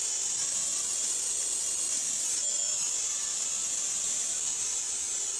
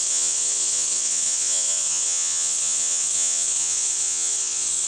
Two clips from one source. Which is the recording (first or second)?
first